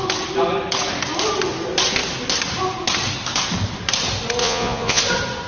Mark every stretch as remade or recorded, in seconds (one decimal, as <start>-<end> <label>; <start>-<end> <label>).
0.0-4.4 recorded; 4.4-5.0 remade; 5.0-5.5 recorded